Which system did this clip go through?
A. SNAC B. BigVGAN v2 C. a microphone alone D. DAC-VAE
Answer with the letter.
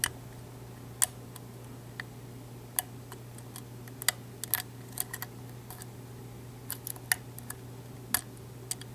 C